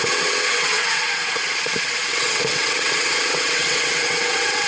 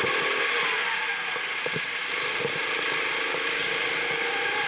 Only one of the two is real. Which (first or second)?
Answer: second